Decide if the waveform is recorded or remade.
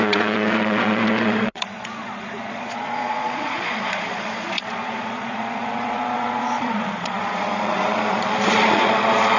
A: remade